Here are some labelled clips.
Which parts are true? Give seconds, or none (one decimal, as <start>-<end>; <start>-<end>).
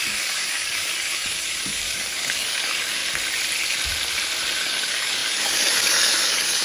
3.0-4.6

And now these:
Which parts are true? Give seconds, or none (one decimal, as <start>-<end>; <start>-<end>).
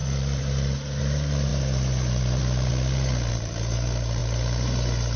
2.7-3.3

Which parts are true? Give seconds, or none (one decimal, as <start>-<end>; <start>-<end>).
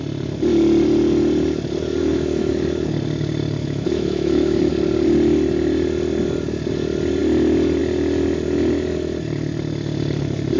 0.0-2.0; 2.5-3.6; 4.7-10.6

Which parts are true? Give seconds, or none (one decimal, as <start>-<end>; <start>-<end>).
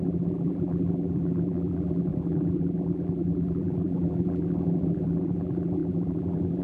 none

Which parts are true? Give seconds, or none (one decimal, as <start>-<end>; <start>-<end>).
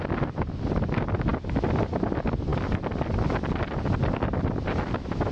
0.0-5.3